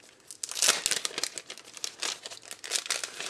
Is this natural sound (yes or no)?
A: yes